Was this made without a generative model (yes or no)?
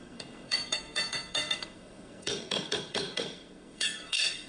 no